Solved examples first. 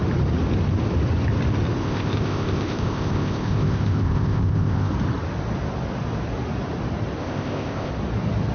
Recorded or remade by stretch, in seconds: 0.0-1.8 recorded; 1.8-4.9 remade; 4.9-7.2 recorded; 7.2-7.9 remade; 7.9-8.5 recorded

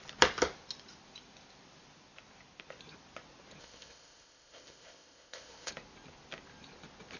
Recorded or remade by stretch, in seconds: 0.0-3.6 recorded; 3.6-5.7 remade; 5.7-7.2 recorded

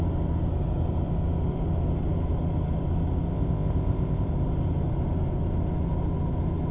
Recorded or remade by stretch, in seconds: 0.0-3.3 recorded; 3.3-4.3 remade; 4.3-6.7 recorded